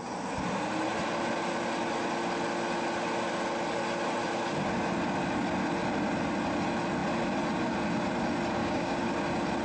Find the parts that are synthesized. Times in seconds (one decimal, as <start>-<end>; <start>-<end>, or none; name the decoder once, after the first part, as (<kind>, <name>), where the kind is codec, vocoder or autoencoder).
8.6-9.1 (codec, DAC)